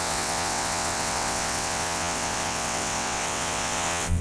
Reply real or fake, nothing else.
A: fake